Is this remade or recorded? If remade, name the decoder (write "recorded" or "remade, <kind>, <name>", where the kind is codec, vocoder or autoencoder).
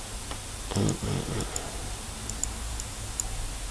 recorded